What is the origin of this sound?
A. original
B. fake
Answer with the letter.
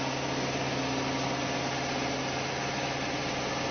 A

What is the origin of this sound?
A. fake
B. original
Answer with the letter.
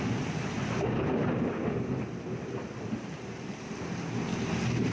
B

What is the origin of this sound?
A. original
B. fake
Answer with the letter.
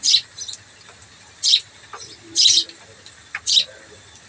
A